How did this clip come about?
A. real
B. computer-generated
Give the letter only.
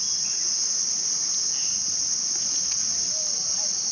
A